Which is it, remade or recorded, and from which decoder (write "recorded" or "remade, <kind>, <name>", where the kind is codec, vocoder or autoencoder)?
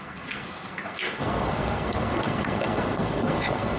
remade, codec, SNAC